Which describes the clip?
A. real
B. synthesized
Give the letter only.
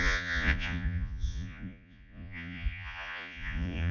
B